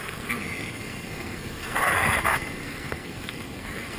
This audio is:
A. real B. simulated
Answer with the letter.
B